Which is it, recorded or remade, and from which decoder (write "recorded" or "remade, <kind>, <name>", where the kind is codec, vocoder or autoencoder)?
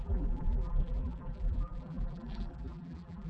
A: remade, vocoder, BigVGAN v2